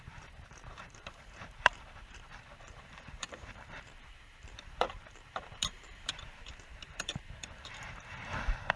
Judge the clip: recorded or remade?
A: remade